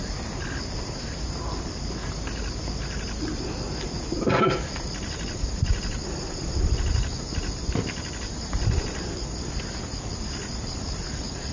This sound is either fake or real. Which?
real